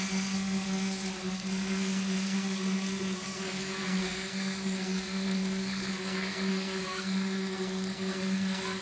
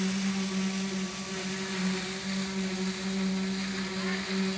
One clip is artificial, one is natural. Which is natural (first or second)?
second